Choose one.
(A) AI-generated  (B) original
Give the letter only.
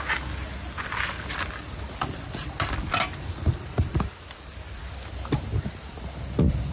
B